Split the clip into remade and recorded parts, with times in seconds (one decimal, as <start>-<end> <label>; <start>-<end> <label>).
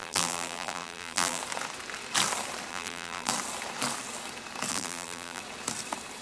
0.0-1.4 remade; 1.4-2.7 recorded; 2.7-3.3 remade; 3.3-4.7 recorded; 4.7-5.4 remade; 5.4-6.2 recorded